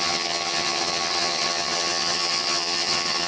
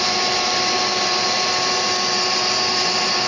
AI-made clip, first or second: first